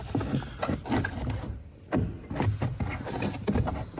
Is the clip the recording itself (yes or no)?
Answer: yes